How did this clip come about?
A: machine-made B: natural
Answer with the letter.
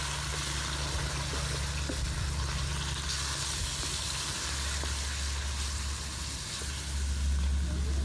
B